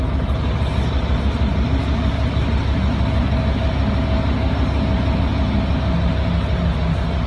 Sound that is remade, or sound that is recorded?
recorded